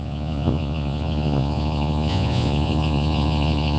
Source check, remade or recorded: remade